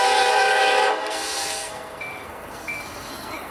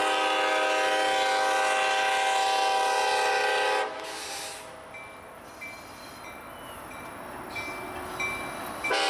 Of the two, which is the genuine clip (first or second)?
second